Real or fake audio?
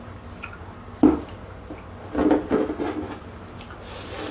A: real